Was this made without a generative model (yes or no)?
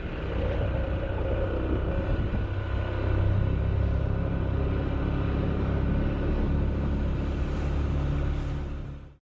yes